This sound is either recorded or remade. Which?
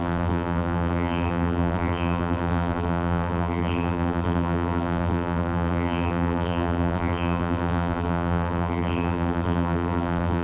remade